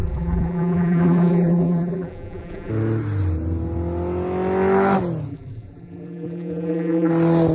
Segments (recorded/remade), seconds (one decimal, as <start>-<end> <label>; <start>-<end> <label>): 0.0-2.7 remade; 2.7-5.3 recorded; 5.3-7.1 remade; 7.1-7.5 recorded